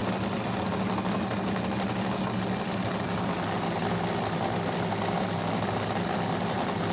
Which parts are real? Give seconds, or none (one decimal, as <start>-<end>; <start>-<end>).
0.0-6.9